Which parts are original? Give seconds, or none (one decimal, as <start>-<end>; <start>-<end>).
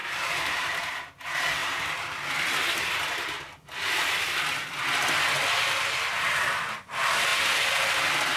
0.8-8.4